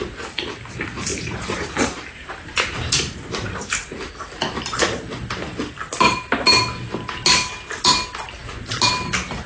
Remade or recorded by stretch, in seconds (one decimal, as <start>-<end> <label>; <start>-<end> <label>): 0.0-1.1 recorded; 1.1-4.1 remade; 4.1-9.5 recorded